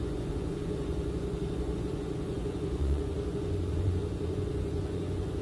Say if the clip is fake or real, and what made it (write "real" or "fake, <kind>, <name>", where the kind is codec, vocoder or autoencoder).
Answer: fake, vocoder, Vocos